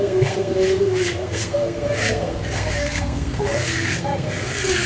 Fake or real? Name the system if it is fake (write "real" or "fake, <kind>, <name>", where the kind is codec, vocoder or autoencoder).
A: fake, codec, SNAC